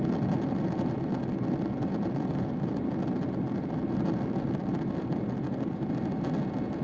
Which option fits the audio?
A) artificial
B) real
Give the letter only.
B